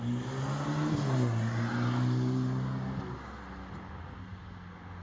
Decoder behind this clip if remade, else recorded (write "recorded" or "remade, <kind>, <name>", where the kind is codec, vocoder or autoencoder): recorded